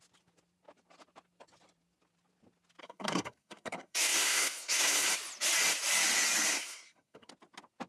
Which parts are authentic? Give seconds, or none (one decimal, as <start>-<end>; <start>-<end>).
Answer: 0.0-2.8; 5.1-6.5; 7.3-7.9